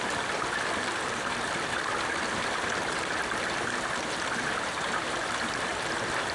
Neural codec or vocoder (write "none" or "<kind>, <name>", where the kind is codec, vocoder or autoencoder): vocoder, BigVGAN v2